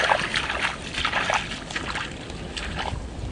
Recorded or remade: recorded